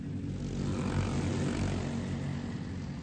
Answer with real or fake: real